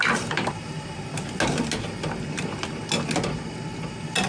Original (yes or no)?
yes